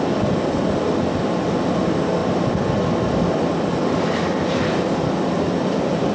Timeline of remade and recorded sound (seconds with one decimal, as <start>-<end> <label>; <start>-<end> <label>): 0.0-6.1 recorded